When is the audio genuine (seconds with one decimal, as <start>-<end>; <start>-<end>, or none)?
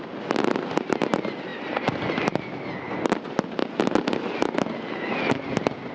0.0-5.9